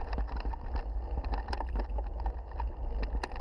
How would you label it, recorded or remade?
recorded